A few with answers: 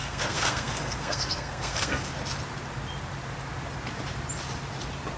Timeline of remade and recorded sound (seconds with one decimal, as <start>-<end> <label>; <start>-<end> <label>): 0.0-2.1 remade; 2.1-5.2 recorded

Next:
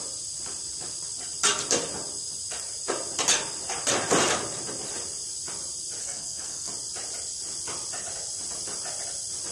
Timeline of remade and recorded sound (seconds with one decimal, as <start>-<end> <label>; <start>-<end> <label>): 0.0-6.0 recorded; 6.0-6.7 remade; 6.7-9.5 recorded

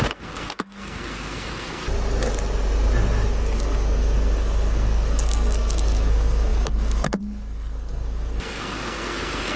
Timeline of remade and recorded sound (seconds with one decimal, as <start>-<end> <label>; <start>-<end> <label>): 0.0-1.8 remade; 1.8-3.3 recorded; 3.3-9.6 remade

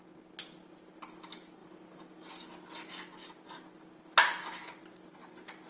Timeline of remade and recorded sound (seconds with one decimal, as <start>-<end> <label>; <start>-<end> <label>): 0.0-5.7 recorded

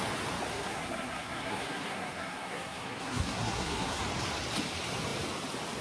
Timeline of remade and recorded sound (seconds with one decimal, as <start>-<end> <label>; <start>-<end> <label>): 0.0-0.5 recorded; 0.5-4.0 remade; 4.0-5.8 recorded

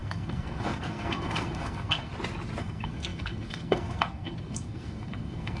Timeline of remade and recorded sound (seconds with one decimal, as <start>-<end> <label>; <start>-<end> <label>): 0.0-2.1 remade; 2.1-2.6 recorded; 2.6-5.6 remade

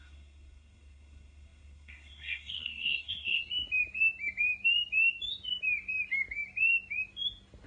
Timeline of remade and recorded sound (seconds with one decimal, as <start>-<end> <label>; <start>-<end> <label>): 0.0-3.4 remade; 3.4-7.7 recorded

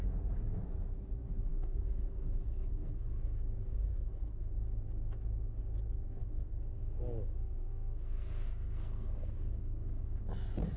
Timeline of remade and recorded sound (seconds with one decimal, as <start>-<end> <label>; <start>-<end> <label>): 0.0-1.5 recorded; 1.5-3.4 remade; 3.4-3.9 recorded; 3.9-4.5 remade; 4.5-6.2 recorded; 6.2-10.2 remade; 10.2-10.8 recorded